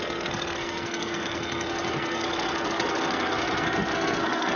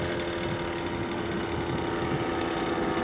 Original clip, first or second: second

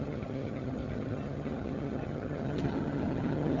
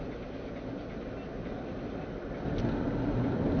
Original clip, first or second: second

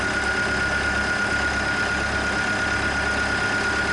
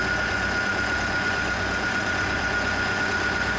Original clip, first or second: first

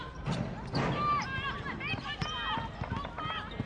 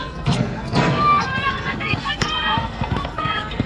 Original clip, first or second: first